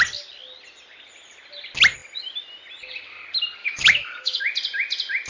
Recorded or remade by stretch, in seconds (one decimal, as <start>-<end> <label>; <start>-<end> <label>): 0.0-3.6 recorded; 3.6-4.4 remade; 4.4-5.3 recorded

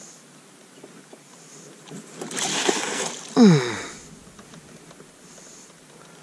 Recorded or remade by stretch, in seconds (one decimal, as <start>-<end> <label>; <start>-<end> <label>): 0.0-2.5 recorded; 2.5-3.1 remade; 3.1-6.2 recorded

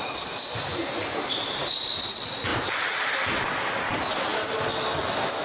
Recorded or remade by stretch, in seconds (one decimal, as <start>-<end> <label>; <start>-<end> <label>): 0.0-0.7 recorded; 0.7-1.7 remade; 1.7-2.5 recorded; 2.5-3.0 remade; 3.0-5.4 recorded